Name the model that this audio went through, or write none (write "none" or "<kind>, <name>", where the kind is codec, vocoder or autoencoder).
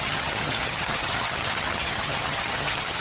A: vocoder, HiFi-GAN